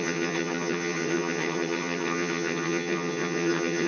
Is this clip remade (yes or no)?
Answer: yes